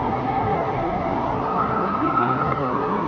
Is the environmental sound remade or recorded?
remade